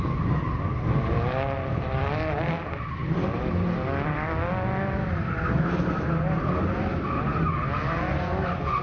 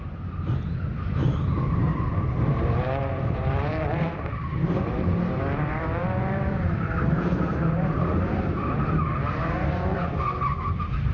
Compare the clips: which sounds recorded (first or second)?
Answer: first